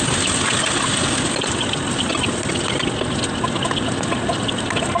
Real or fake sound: real